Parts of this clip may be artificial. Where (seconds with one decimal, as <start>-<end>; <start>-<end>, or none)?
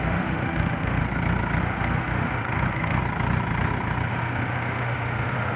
0.0-1.0; 1.6-3.0; 4.1-5.6